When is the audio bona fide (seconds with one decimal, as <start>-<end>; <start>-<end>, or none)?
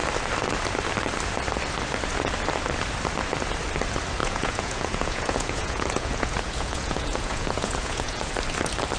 0.0-4.2; 8.3-9.0